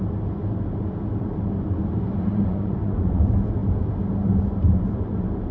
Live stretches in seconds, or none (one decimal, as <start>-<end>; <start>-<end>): 0.0-2.3; 3.2-5.5

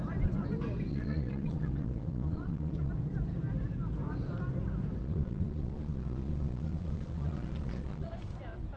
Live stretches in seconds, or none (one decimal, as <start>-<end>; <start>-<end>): 0.0-0.9; 2.9-5.0; 8.1-8.8

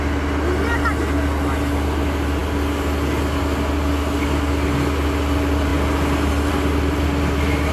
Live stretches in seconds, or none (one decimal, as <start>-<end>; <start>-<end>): 0.0-7.7

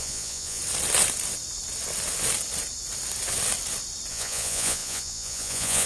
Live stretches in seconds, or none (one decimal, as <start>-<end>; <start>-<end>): 0.6-4.1